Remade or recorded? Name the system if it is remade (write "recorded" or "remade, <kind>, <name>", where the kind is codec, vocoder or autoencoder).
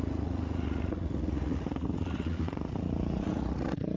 remade, vocoder, Vocos